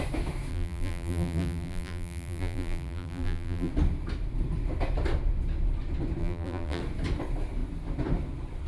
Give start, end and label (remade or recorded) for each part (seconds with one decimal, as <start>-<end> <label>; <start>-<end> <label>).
0.0-0.5 recorded; 0.5-3.7 remade; 3.7-6.2 recorded; 6.2-6.8 remade; 6.8-8.7 recorded

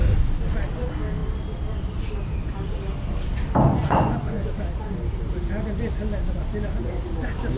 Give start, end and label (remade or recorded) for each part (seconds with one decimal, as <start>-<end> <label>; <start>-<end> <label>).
0.0-3.7 recorded; 3.7-4.5 remade; 4.5-7.6 recorded

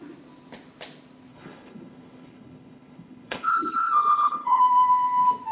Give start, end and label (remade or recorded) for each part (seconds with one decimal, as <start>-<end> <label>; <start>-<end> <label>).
0.0-1.3 recorded; 1.3-4.6 remade; 4.6-5.5 recorded

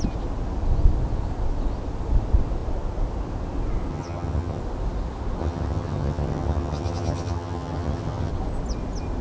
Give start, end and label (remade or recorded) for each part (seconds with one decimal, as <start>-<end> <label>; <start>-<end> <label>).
0.0-3.9 recorded; 3.9-4.6 remade; 4.6-5.4 recorded; 5.4-8.3 remade; 8.3-9.2 recorded

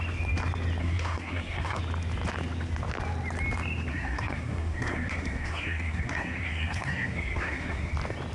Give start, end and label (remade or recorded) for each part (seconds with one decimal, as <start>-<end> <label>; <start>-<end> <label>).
0.0-0.8 recorded; 0.8-1.8 remade; 1.8-3.9 recorded; 3.9-7.9 remade; 7.9-8.3 recorded

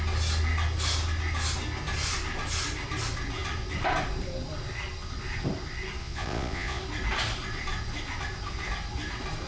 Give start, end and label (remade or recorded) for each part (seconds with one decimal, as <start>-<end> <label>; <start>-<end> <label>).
0.0-6.0 recorded; 6.0-6.8 remade; 6.8-9.5 recorded

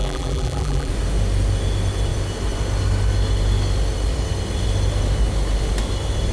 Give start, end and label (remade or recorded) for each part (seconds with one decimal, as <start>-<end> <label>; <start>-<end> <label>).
0.0-0.9 remade; 0.9-6.3 recorded